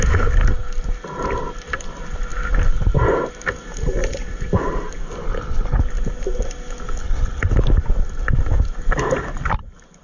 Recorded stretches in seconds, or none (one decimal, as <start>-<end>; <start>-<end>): 0.0-5.2; 5.8-7.0; 7.5-10.0